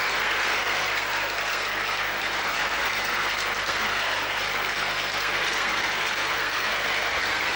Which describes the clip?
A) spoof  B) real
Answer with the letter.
A